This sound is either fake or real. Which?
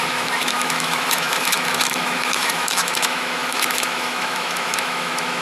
fake